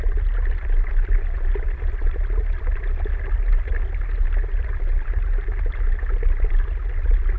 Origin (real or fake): real